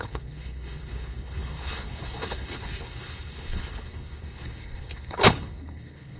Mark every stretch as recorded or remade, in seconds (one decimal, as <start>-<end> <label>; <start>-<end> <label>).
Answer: 0.0-6.2 remade